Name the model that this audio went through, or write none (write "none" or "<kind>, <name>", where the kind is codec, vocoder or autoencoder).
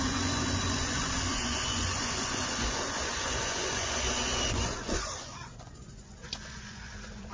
vocoder, Vocos